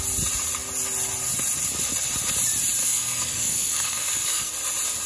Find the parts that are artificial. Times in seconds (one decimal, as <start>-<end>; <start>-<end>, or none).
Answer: 2.8-4.5

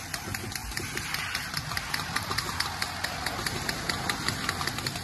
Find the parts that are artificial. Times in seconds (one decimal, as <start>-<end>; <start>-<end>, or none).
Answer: none

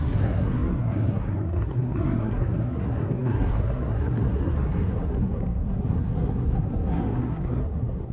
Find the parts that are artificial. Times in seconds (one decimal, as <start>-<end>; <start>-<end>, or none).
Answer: 0.0-8.1